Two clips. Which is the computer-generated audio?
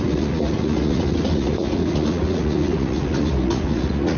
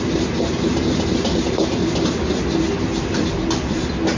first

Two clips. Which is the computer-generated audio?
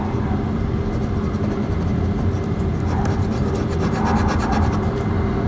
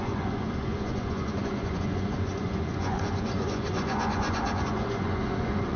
second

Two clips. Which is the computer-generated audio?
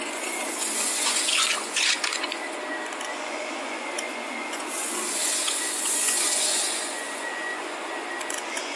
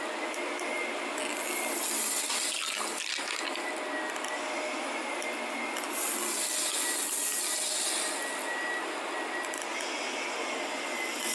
first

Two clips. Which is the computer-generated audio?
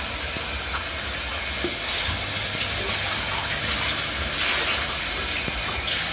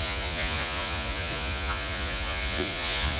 second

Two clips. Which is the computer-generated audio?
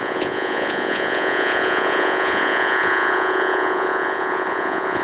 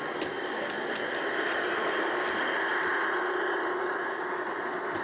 first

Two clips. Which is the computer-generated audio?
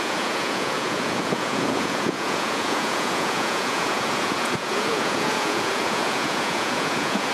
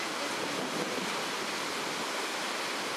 first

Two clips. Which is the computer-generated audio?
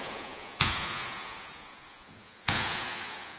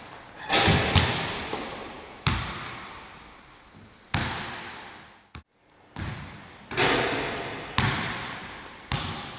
first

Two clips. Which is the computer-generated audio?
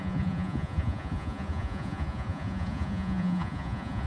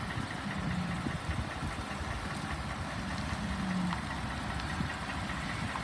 first